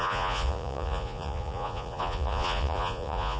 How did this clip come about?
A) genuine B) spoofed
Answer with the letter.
B